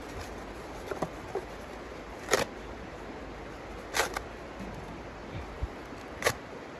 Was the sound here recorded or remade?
recorded